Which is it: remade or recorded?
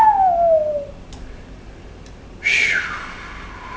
recorded